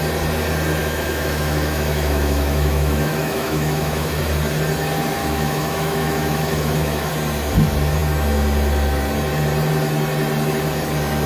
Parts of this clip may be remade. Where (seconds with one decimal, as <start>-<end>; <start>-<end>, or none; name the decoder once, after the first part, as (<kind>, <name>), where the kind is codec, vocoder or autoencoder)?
0.8-4.2 (autoencoder, DAC-VAE); 5.2-7.1